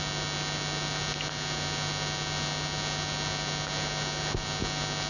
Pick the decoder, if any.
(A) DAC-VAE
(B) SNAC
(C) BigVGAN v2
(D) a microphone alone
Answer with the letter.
D